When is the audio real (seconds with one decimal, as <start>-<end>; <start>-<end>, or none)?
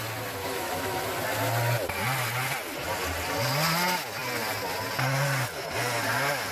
0.0-0.4; 1.0-6.5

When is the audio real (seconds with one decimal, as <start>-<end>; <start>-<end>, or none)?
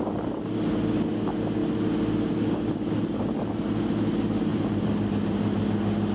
0.0-4.5; 5.6-6.1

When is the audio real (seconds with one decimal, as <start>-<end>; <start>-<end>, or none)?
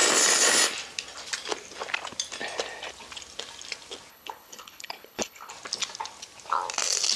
0.0-4.1; 5.5-7.2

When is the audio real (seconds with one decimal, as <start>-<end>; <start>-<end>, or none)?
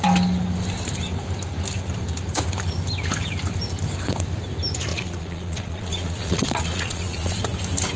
0.0-4.9; 7.4-8.0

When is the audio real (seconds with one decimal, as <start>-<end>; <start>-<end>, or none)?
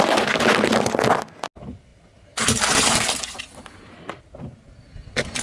0.0-5.4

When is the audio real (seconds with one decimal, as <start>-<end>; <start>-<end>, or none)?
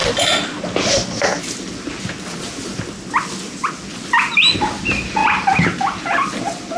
0.0-6.8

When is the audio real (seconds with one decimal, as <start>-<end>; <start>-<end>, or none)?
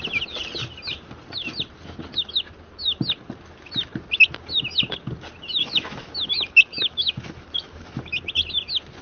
0.0-5.5; 8.2-9.0